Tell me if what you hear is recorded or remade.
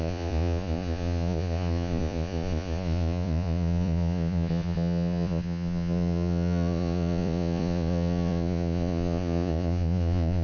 remade